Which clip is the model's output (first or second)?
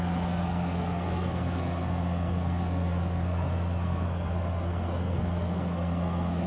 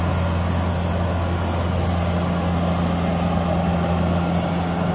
first